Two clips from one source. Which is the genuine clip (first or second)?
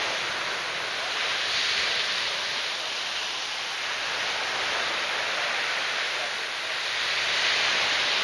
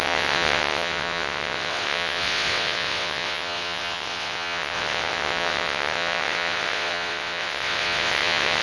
first